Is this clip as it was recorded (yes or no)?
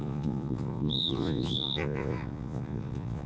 no